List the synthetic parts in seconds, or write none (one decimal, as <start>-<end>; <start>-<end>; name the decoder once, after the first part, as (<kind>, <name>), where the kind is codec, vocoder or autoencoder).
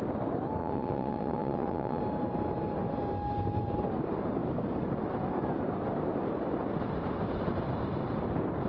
0.6-2.0 (vocoder, Vocos)